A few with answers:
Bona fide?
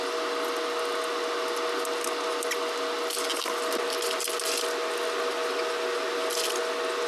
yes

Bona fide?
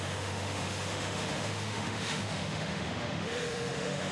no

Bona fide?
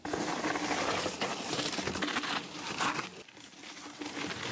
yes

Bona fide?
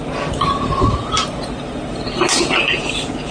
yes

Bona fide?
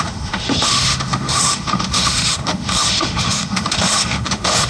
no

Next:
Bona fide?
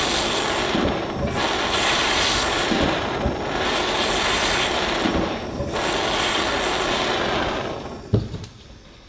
yes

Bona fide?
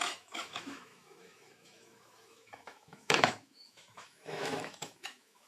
no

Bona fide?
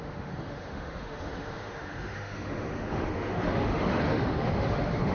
no